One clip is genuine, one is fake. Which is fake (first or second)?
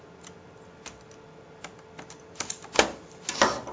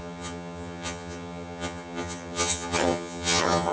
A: second